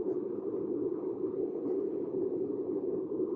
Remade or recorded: recorded